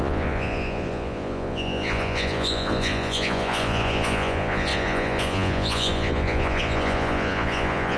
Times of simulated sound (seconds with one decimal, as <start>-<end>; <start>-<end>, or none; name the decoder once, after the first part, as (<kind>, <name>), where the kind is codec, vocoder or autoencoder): 0.0-8.0 (vocoder, Vocos)